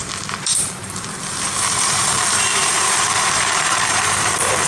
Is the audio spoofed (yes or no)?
yes